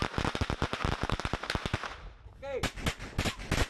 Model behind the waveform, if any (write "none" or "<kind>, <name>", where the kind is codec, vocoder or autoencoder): none